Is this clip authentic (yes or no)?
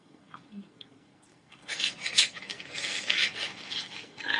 no